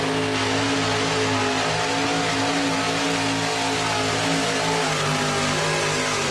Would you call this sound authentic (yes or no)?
yes